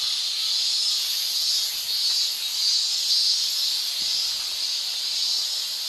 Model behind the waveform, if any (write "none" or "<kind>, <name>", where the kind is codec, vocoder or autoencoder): none